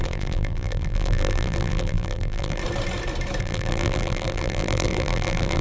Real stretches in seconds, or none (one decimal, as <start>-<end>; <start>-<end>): 2.6-3.4